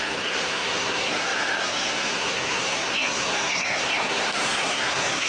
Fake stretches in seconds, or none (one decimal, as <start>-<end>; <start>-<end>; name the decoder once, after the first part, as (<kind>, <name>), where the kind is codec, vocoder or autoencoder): 0.0-5.3 (codec, SNAC)